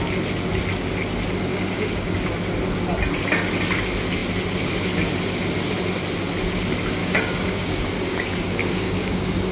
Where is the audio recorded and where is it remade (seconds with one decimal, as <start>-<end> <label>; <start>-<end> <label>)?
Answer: 0.0-1.5 recorded; 1.5-2.1 remade; 2.1-7.0 recorded; 7.0-9.5 remade